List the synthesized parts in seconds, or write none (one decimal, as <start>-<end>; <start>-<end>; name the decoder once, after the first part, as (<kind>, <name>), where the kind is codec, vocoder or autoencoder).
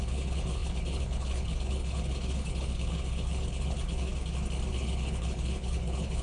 0.0-4.1 (codec, HILCodec); 4.7-6.2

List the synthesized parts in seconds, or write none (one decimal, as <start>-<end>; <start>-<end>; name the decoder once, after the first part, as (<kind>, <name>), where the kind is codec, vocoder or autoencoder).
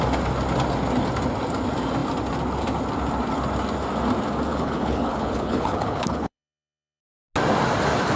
4.5-7.0 (codec, HILCodec)